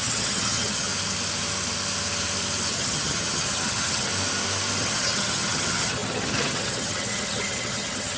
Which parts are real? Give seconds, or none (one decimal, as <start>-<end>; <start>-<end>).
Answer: 0.9-2.7; 4.1-4.8